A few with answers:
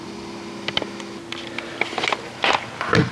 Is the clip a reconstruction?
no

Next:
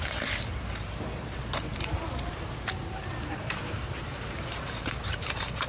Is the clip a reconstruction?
yes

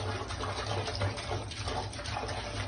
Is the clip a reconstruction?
no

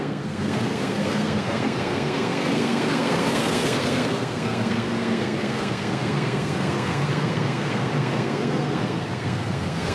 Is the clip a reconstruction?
yes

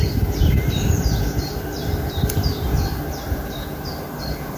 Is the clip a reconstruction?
no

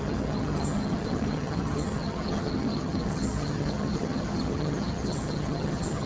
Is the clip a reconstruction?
yes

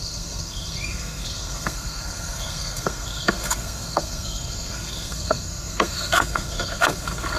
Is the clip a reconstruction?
yes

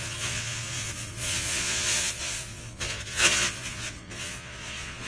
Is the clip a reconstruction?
yes